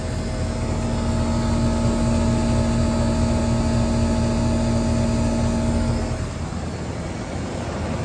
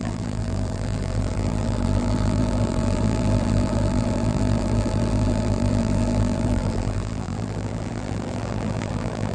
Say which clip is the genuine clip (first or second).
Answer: first